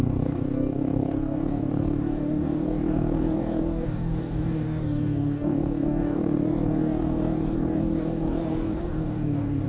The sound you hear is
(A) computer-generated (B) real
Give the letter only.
A